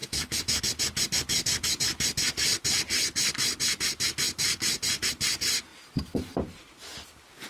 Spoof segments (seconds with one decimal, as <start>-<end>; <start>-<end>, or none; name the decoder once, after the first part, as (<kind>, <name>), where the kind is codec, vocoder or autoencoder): 0.0-0.6 (autoencoder, DAC-VAE)